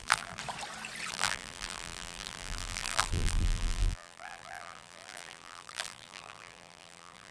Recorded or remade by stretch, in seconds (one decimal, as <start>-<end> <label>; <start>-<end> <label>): 0.0-0.4 remade; 0.4-1.1 recorded; 1.1-7.3 remade